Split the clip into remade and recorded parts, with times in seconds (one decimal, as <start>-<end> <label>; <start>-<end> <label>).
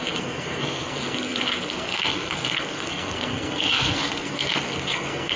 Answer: 0.0-5.4 remade